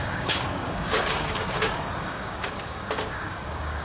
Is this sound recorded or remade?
remade